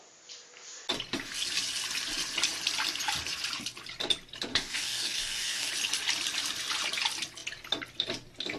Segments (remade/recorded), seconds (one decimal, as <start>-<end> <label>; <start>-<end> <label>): 0.0-4.5 recorded; 4.5-5.7 remade; 5.7-8.6 recorded